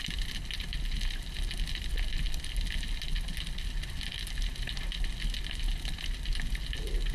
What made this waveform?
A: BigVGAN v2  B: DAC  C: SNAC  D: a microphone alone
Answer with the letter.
D